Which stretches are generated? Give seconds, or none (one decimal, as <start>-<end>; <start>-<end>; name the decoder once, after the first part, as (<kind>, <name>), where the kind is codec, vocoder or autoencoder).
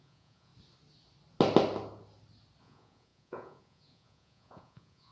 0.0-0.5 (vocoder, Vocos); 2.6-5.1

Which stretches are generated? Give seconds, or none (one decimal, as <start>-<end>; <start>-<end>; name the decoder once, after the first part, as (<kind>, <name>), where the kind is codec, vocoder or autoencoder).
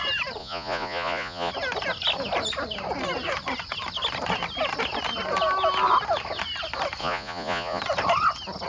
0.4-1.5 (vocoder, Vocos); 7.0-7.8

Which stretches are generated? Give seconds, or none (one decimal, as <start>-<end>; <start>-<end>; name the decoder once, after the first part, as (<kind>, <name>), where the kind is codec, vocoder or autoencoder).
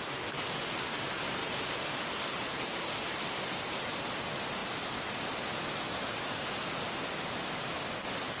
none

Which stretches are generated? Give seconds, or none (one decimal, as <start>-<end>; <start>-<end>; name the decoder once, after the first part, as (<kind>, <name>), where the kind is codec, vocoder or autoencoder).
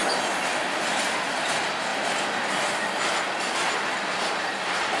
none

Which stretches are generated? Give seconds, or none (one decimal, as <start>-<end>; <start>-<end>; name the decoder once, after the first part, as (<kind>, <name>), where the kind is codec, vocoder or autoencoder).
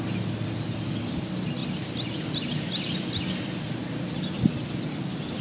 none